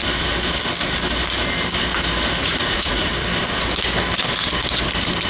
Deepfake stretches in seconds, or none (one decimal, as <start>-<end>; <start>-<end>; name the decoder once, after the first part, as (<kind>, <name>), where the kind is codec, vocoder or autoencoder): 2.4-3.1 (vocoder, Vocos)